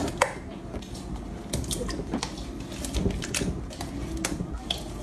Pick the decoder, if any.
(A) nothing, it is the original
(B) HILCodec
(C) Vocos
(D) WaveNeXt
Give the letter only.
A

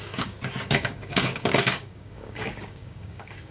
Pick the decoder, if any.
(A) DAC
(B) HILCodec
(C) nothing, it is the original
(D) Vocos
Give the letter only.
A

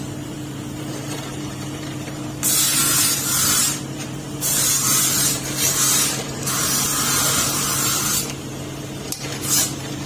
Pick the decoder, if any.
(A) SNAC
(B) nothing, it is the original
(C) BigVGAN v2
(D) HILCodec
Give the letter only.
C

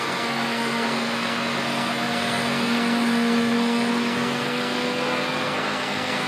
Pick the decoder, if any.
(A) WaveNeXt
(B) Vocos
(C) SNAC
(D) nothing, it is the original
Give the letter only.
C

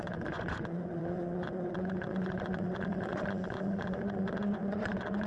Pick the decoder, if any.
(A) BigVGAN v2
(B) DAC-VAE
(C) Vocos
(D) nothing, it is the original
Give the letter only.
C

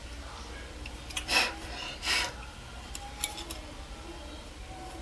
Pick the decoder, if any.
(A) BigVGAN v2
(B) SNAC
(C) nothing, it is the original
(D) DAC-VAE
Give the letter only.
A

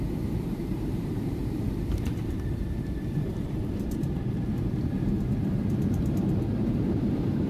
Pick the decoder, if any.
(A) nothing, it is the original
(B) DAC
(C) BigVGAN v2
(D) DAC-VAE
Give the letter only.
C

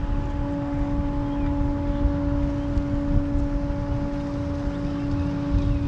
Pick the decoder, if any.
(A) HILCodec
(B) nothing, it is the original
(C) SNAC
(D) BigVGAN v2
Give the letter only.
B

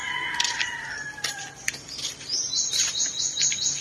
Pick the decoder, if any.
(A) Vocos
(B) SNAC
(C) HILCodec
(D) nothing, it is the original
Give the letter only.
D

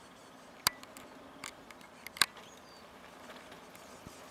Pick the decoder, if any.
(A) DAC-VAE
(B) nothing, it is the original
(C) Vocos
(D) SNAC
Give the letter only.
B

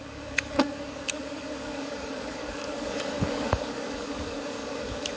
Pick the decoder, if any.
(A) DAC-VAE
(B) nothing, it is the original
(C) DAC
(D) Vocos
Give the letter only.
C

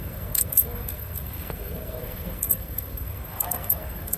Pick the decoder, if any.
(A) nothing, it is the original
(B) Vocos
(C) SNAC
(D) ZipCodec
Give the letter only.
C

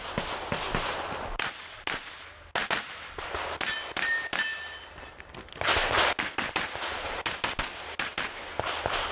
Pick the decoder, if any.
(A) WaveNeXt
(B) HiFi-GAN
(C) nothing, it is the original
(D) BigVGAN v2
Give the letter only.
C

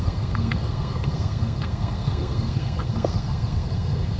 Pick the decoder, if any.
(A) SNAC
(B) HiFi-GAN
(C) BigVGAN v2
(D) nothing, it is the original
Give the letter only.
A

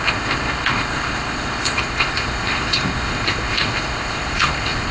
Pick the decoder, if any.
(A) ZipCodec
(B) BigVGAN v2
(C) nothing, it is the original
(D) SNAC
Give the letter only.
A